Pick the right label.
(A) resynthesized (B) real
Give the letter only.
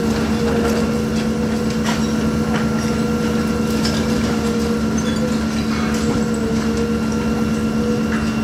B